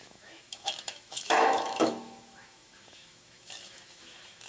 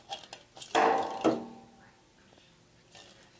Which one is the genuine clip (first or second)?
second